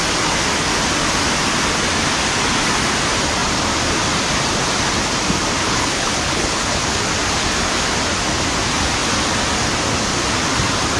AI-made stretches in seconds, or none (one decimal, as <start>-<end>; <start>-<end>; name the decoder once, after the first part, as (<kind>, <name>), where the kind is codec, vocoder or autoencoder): 5.6-7.0 (codec, HILCodec)